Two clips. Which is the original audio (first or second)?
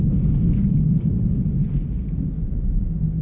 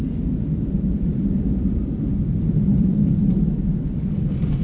first